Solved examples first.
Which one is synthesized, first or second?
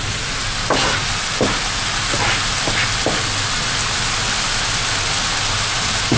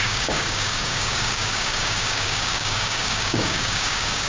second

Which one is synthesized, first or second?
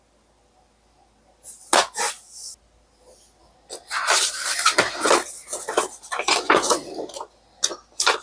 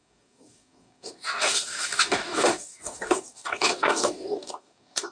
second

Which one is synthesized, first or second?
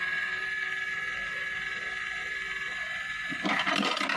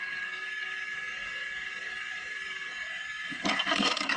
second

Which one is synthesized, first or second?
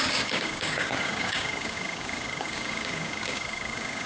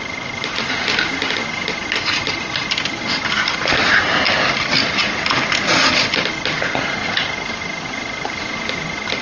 first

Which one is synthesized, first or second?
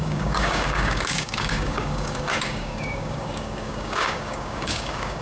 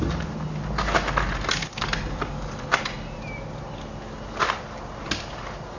first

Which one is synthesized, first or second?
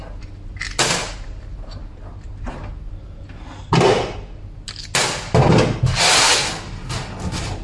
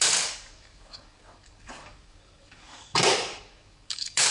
second